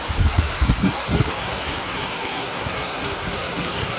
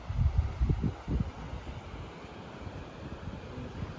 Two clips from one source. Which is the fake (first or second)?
first